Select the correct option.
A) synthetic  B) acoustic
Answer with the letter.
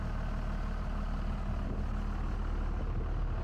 B